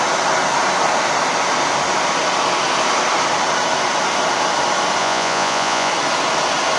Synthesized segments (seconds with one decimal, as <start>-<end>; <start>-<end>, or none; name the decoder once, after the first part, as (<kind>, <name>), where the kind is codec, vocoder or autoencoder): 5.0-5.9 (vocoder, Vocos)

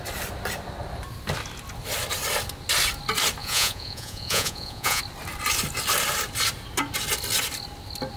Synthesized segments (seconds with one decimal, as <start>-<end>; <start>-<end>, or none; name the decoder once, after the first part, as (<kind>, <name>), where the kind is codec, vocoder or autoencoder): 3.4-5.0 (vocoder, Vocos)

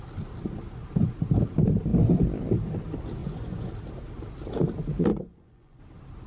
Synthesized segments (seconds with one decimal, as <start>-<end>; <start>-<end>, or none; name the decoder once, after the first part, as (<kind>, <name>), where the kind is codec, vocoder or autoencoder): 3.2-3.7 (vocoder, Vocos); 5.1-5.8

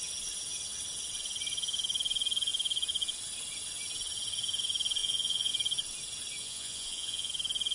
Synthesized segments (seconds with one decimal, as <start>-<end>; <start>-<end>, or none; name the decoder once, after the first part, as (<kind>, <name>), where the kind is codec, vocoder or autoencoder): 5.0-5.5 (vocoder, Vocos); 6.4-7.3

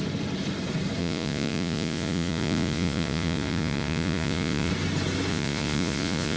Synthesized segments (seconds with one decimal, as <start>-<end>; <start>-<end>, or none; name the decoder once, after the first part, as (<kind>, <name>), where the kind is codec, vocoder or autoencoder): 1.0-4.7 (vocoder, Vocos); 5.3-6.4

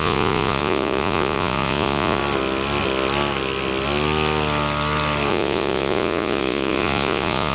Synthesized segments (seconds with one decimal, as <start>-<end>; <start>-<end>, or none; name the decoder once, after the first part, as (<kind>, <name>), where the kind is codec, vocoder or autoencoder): 0.0-2.2 (vocoder, Vocos); 5.3-7.5